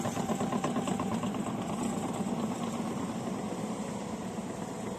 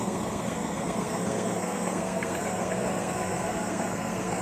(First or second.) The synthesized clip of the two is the second